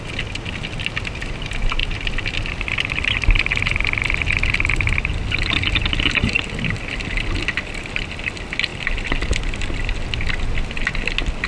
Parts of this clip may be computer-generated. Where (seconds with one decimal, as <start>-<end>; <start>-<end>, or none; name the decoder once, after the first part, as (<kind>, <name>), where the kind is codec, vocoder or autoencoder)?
none

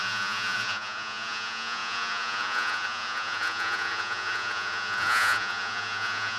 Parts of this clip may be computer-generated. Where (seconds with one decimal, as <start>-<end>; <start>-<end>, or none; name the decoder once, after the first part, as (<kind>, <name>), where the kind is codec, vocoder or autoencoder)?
0.0-6.4 (vocoder, Vocos)

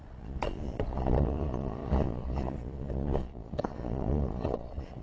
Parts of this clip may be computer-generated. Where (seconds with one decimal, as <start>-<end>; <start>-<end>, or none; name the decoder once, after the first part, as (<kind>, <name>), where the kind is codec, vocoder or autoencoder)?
0.0-5.0 (vocoder, Vocos)

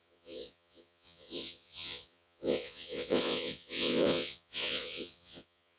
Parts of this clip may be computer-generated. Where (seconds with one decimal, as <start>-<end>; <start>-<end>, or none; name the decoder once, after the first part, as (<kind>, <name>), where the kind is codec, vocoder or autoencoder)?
0.0-5.8 (vocoder, Vocos)

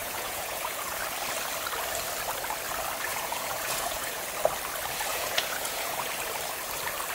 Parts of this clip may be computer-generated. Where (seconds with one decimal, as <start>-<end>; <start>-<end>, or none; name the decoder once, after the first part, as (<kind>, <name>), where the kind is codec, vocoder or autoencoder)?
0.0-1.0 (vocoder, Vocos); 3.1-4.3; 5.1-6.1

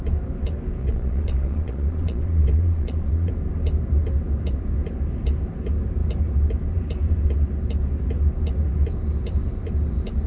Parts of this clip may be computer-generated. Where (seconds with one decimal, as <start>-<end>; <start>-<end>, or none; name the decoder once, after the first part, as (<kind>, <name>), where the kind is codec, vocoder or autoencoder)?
0.8-3.3 (vocoder, Vocos)

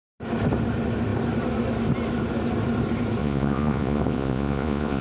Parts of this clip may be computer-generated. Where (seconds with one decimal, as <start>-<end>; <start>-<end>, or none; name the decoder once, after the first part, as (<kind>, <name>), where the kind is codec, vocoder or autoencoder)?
3.2-5.0 (vocoder, Vocos)